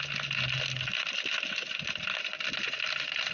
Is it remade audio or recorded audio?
recorded